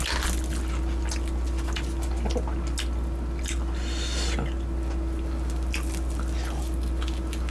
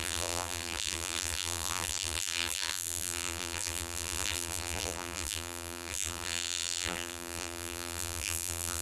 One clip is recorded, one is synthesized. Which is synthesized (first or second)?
second